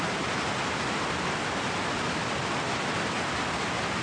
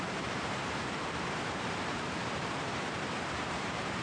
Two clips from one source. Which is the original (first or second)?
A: first